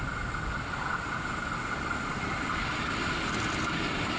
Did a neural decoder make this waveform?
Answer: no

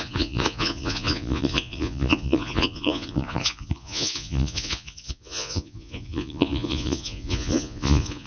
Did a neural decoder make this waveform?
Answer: yes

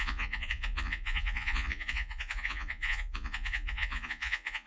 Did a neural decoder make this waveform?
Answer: yes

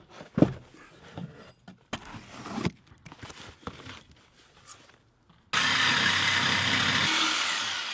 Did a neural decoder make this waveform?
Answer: no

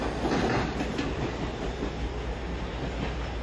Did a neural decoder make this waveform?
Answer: no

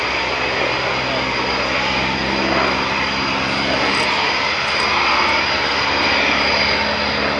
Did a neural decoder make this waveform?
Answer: no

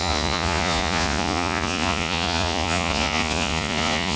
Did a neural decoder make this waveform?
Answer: yes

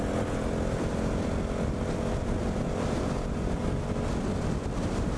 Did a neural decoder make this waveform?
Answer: no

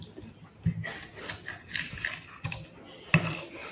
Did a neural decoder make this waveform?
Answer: no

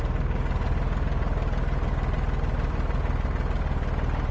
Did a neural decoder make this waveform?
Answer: no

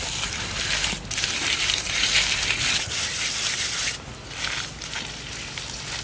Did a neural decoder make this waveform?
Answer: no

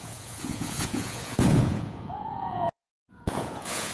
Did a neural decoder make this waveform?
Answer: yes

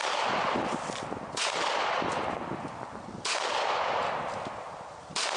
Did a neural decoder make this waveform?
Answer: no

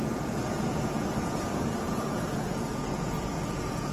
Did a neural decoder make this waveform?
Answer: yes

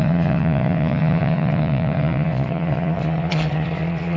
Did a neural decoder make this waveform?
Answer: yes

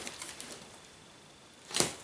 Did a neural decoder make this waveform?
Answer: no